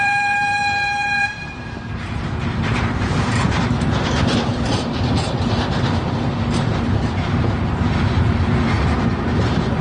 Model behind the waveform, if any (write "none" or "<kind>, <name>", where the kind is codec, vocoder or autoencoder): vocoder, BigVGAN v2